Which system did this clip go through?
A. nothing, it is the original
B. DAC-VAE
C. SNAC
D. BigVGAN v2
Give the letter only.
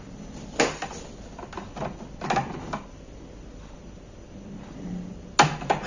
A